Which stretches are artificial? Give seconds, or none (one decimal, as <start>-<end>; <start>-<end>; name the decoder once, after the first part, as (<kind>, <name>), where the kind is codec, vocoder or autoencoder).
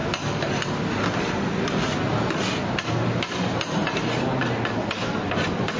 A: none